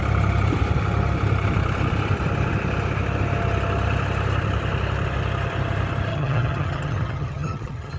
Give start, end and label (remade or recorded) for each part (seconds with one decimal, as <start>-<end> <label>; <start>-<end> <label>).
0.0-6.1 recorded; 6.1-8.0 remade

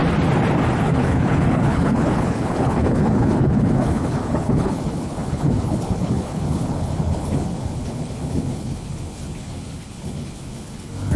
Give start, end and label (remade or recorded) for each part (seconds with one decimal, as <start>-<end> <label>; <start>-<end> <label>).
0.0-0.8 recorded; 0.8-11.2 remade